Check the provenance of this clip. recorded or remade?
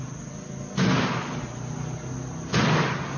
recorded